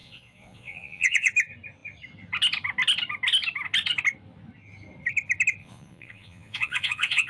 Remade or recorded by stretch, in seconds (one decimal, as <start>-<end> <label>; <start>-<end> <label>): 0.0-1.3 remade; 1.3-5.6 recorded; 5.6-7.3 remade